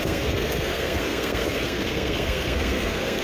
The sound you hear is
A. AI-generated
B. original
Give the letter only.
A